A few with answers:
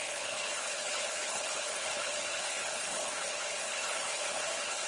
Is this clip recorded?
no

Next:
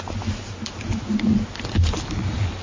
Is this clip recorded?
yes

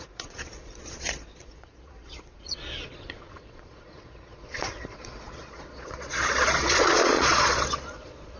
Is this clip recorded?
no